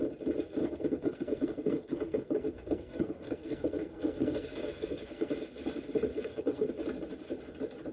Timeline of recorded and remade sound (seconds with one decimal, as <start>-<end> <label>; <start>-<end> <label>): 0.0-0.6 recorded; 0.6-5.3 remade; 5.3-6.1 recorded; 6.1-6.7 remade; 6.7-7.9 recorded